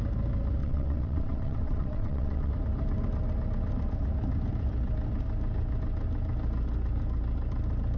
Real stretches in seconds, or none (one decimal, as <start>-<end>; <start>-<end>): 0.0-0.6; 2.5-8.0